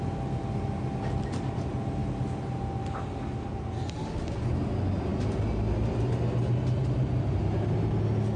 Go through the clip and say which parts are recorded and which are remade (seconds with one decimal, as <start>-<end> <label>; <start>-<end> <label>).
0.0-6.8 recorded; 6.8-7.4 remade; 7.4-8.4 recorded